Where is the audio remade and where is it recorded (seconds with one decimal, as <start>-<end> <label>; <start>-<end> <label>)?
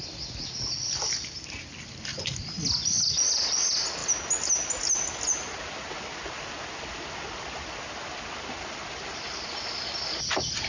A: 0.0-10.7 recorded